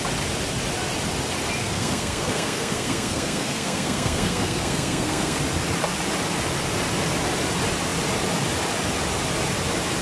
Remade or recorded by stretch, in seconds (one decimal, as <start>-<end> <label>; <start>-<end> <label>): 0.0-1.6 recorded; 1.6-5.4 remade; 5.4-10.0 recorded